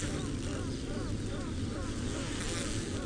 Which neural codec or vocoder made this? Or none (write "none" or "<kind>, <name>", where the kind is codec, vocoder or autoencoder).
none